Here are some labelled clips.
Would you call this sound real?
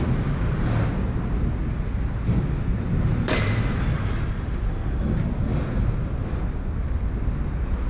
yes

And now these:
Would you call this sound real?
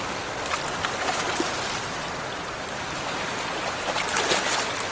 yes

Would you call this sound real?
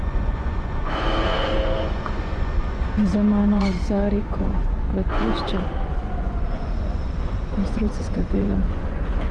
no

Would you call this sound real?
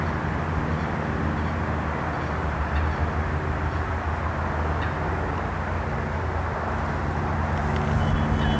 yes